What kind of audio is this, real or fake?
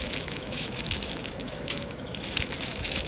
fake